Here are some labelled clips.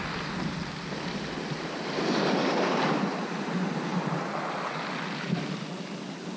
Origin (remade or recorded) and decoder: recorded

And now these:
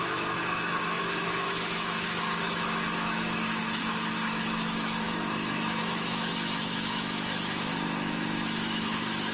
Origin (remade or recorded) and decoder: remade, autoencoder, DAC-VAE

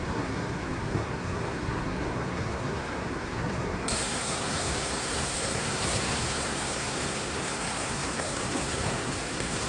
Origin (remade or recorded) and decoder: remade, codec, SNAC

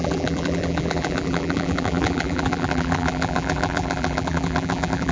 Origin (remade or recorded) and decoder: remade, vocoder, BigVGAN v2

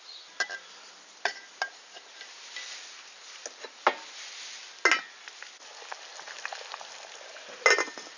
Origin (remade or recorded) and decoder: recorded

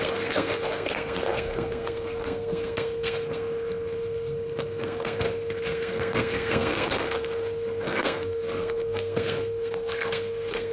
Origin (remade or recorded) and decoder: remade, codec, SNAC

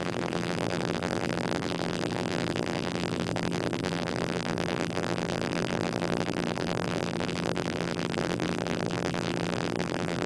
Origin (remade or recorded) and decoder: remade, vocoder, BigVGAN v2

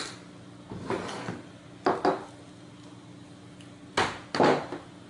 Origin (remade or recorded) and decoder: recorded